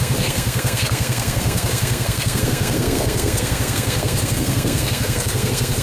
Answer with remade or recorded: remade